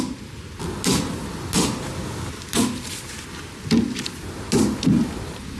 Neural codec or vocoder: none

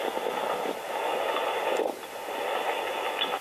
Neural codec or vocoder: none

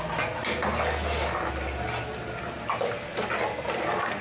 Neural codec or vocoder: none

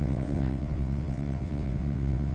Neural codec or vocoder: vocoder, WaveNeXt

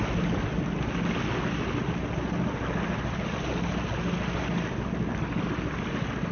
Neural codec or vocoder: none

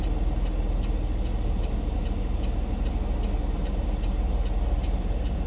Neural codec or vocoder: none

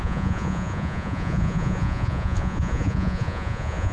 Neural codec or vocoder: vocoder, Vocos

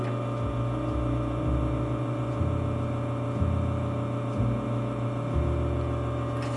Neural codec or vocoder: none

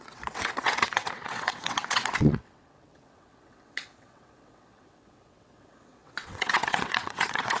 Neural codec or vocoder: vocoder, WaveNeXt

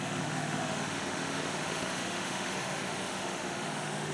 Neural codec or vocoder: autoencoder, DAC-VAE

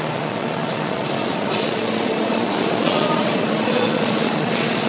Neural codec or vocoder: vocoder, Vocos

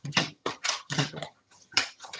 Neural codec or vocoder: vocoder, HiFi-GAN